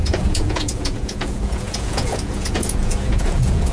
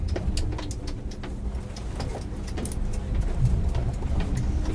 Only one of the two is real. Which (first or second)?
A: second